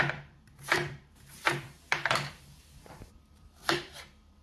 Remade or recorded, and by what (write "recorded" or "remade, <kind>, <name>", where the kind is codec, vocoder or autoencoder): remade, vocoder, BigVGAN v2